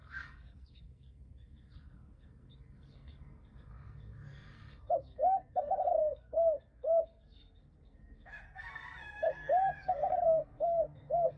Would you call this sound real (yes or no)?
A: no